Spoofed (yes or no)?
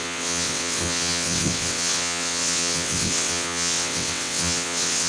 yes